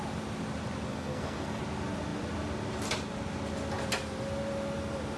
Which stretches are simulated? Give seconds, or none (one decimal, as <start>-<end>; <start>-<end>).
0.9-1.6